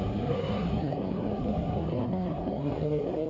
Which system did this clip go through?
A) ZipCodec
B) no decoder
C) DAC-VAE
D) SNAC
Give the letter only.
D